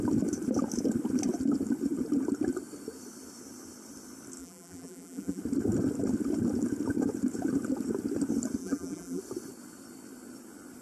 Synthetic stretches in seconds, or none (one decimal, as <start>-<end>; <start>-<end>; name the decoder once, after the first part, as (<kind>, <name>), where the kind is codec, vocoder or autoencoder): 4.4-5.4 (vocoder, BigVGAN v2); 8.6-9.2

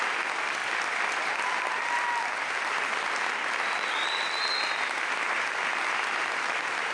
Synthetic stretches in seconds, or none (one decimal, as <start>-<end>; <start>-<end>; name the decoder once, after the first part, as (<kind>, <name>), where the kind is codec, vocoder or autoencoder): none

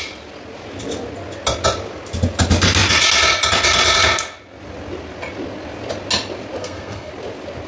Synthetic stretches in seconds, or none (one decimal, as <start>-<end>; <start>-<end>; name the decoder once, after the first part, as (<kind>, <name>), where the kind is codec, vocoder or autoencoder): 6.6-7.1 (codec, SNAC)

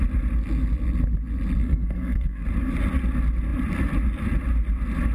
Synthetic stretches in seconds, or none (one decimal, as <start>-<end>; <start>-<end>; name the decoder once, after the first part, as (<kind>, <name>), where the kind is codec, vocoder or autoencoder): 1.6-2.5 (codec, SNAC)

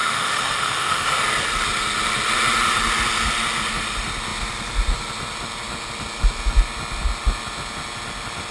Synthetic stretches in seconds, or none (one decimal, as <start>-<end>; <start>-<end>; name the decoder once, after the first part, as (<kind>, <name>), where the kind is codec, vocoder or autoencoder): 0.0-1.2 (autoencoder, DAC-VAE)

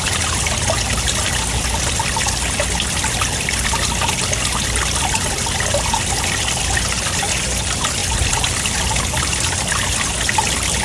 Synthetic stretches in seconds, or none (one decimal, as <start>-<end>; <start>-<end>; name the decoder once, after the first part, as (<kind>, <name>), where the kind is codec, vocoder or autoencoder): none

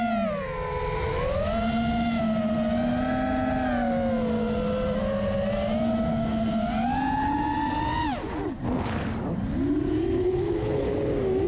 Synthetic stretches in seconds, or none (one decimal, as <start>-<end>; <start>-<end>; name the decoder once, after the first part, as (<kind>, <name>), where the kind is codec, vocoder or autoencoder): 10.2-10.9 (codec, HILCodec)

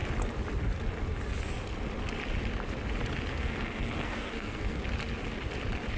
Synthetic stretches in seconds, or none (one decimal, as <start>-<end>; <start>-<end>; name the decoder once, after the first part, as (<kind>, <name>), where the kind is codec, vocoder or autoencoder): 3.3-4.8 (codec, SNAC)